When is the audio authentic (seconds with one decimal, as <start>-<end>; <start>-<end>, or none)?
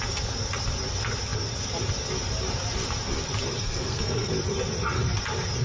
0.0-3.6; 4.3-5.6